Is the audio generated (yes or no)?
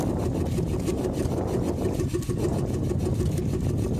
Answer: no